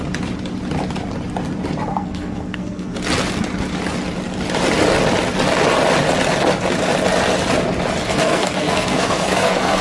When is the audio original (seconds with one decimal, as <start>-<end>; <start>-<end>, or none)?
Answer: 0.0-1.9; 2.9-8.0